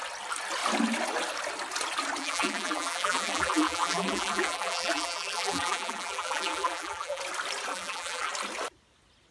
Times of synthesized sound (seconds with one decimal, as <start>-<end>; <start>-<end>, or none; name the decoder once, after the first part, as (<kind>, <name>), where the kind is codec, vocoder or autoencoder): 2.2-7.2 (vocoder, BigVGAN v2); 7.7-8.3